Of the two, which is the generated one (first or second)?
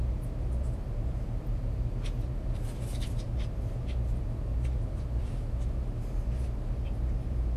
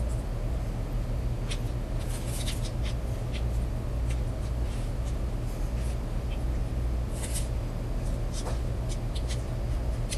first